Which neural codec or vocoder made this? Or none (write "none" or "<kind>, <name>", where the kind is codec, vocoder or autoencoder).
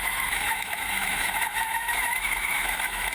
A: autoencoder, DAC-VAE